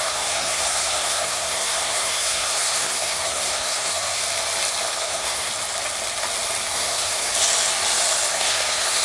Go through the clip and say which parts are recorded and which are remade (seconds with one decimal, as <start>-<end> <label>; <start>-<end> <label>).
0.0-4.2 remade; 4.2-5.0 recorded; 5.0-5.5 remade; 5.5-6.7 recorded; 6.7-7.3 remade; 7.3-8.3 recorded; 8.3-9.0 remade